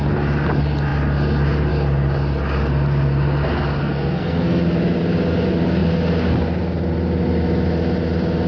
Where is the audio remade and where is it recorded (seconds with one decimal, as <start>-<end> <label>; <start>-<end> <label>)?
0.0-3.8 recorded; 3.8-4.6 remade; 4.6-8.5 recorded